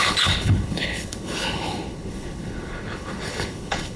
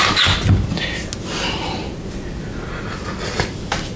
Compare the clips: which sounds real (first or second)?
second